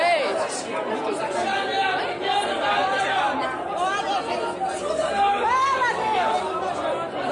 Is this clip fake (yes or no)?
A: no